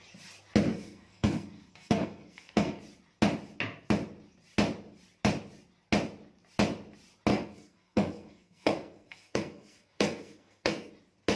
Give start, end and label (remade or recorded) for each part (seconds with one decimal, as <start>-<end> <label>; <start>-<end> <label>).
0.0-0.7 recorded; 0.7-2.8 remade; 2.8-7.3 recorded; 7.3-10.9 remade; 10.9-11.4 recorded